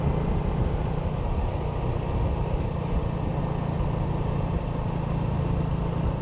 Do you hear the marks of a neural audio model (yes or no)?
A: no